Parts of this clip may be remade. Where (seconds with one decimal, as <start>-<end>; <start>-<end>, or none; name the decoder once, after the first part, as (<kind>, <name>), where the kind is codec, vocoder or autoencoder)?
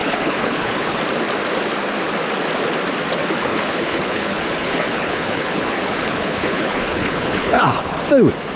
0.0-1.0 (codec, HILCodec); 3.5-8.0